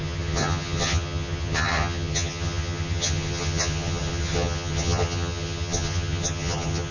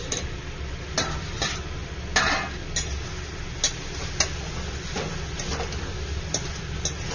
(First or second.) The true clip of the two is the second